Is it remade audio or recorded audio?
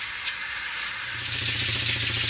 recorded